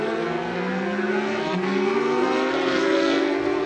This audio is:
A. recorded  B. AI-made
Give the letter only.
B